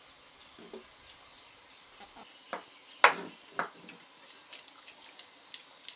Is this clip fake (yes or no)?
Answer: no